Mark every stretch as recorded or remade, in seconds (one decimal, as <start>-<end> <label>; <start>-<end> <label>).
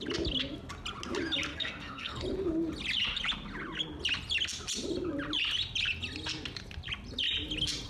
0.0-1.5 recorded; 1.5-2.2 remade; 2.2-7.9 recorded